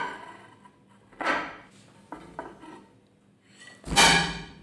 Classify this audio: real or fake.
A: real